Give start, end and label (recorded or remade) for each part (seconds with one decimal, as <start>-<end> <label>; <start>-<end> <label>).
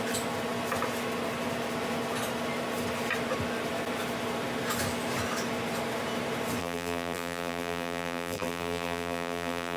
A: 0.0-6.6 recorded; 6.6-9.8 remade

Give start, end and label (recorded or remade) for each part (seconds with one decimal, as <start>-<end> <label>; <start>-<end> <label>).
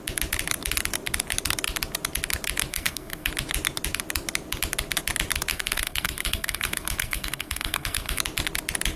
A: 0.0-2.7 recorded; 2.7-3.3 remade; 3.3-5.5 recorded; 5.5-8.2 remade; 8.2-9.0 recorded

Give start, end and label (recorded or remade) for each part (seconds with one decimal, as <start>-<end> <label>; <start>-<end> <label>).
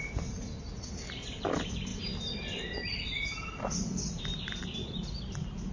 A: 0.0-5.7 recorded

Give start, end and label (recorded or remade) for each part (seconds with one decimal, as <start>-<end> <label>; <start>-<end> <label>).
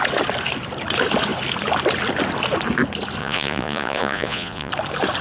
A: 0.0-3.2 recorded; 3.2-4.7 remade; 4.7-5.2 recorded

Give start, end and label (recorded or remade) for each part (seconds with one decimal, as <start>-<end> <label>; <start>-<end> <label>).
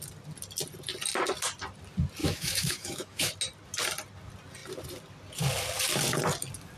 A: 0.0-2.2 recorded; 2.2-3.3 remade; 3.3-6.8 recorded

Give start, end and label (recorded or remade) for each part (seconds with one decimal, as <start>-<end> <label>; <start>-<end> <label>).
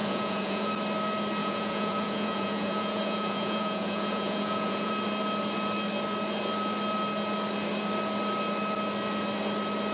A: 0.0-0.7 remade; 0.7-1.4 recorded; 1.4-4.9 remade; 4.9-9.9 recorded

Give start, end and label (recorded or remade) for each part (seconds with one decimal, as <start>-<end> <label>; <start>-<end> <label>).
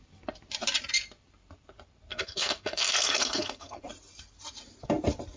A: 0.0-2.1 recorded; 2.1-3.8 remade; 3.8-5.4 recorded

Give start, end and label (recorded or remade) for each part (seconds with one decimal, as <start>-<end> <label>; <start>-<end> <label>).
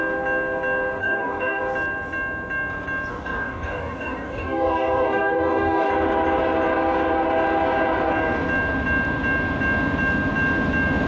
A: 0.0-1.0 recorded; 1.0-1.6 remade; 1.6-3.1 recorded; 3.1-5.9 remade; 5.9-11.1 recorded